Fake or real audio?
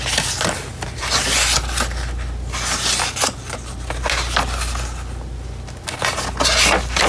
real